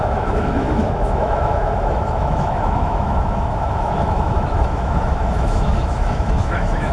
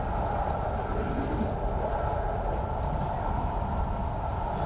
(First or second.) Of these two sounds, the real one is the second